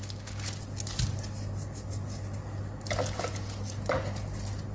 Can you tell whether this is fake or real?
real